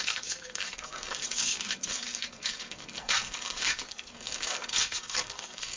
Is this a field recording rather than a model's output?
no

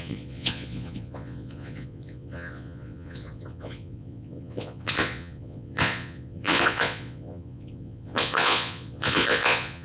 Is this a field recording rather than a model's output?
no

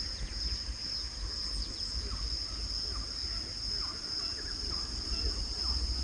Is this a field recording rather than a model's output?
yes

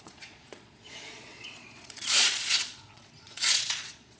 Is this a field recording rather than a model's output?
no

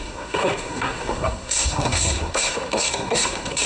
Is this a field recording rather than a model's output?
no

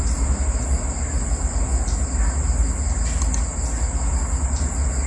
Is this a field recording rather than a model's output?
yes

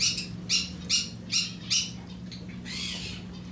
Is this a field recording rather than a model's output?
yes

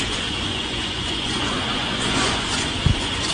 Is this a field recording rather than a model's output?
no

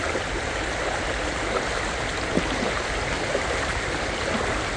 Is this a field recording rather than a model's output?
yes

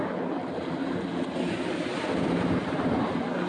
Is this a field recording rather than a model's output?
no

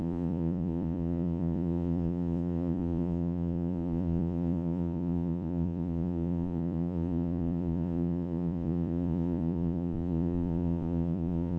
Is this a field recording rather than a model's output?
no